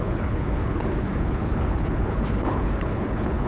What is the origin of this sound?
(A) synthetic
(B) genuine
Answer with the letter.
A